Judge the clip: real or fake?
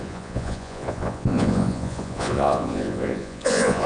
fake